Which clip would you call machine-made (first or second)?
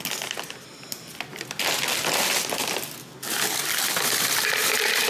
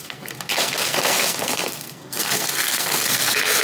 second